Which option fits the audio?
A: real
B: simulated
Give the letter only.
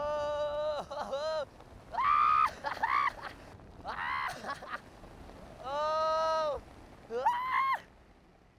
A